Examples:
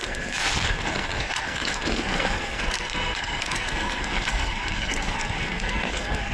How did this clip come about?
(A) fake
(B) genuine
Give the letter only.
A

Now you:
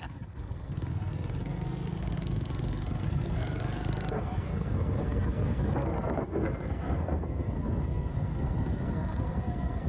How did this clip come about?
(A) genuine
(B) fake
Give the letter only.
B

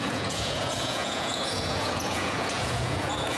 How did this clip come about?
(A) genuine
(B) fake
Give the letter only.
B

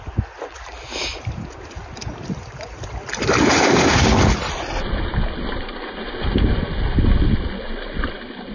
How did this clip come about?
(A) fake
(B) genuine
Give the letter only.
B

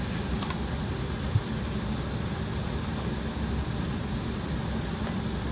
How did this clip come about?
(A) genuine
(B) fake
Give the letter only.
A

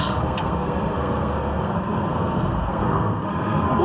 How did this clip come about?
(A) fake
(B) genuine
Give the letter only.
A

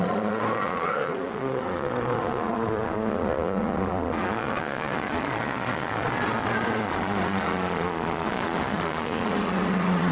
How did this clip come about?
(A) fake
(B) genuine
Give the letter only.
A